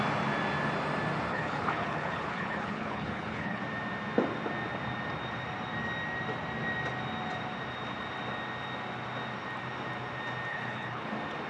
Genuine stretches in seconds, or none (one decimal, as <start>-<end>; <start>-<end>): 0.0-1.3; 3.6-10.5; 11.1-11.5

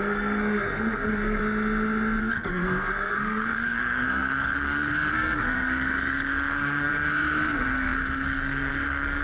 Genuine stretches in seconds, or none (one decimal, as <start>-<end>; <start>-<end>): 1.4-2.2